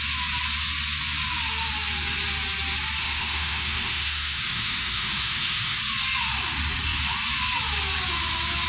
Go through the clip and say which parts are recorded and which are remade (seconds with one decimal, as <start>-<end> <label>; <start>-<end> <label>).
0.0-3.0 recorded; 3.0-5.8 remade; 5.8-8.7 recorded